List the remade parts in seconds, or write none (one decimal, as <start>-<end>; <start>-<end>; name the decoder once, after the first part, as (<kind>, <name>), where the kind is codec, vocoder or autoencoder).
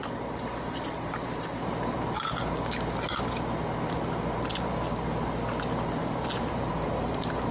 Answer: 0.0-2.4 (vocoder, BigVGAN v2); 6.0-7.5